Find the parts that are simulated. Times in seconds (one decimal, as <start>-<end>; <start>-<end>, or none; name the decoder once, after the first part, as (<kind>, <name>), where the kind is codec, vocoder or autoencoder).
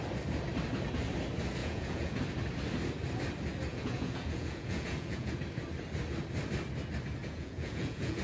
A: 1.6-2.2 (vocoder, Vocos); 3.7-5.4; 7.2-8.2